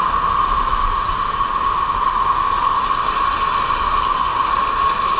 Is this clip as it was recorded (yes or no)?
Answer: yes